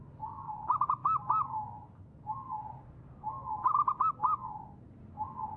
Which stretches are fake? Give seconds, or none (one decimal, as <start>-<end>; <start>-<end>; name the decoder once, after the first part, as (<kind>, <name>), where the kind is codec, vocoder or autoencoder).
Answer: none